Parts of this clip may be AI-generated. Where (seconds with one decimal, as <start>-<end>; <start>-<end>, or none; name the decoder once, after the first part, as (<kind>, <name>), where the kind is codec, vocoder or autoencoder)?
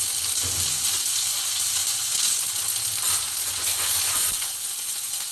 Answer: 1.8-2.5 (vocoder, Vocos); 3.4-5.3